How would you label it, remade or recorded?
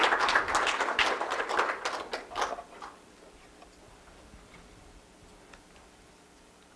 recorded